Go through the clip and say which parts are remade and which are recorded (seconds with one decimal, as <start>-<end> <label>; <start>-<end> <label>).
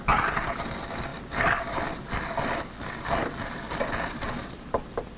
0.0-5.2 recorded